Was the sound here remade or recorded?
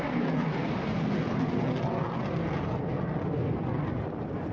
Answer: recorded